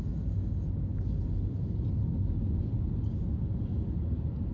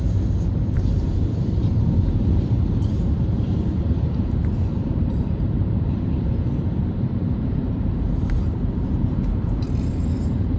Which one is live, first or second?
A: first